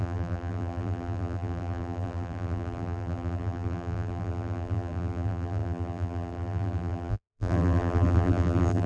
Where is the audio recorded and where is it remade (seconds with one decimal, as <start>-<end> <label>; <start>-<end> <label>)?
0.0-8.9 remade